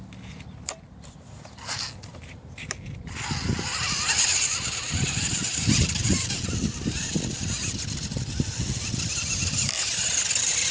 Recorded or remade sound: recorded